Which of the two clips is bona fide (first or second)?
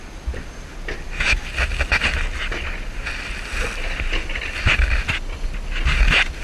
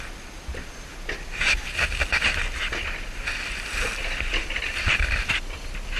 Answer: first